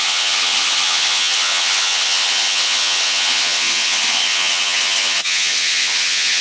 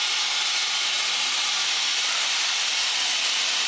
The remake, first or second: first